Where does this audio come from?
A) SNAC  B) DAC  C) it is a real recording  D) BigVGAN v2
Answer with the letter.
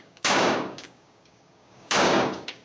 B